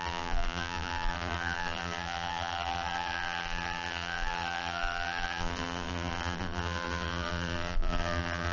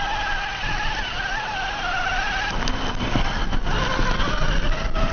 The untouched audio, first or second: second